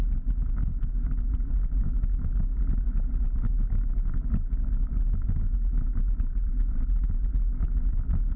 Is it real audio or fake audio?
real